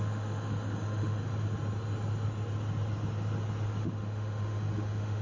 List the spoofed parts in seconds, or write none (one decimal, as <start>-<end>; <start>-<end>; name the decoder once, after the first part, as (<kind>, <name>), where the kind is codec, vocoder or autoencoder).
0.0-1.2 (autoencoder, DAC-VAE); 3.8-5.2